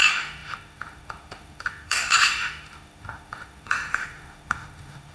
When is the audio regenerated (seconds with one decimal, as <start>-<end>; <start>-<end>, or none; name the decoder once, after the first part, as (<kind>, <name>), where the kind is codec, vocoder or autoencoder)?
0.0-5.1 (autoencoder, DAC-VAE)